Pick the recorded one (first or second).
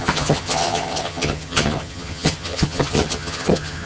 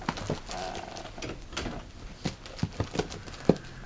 second